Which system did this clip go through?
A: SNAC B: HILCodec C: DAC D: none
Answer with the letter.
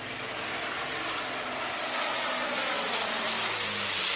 D